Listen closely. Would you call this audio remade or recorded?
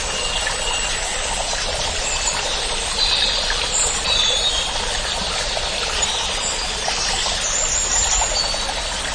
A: recorded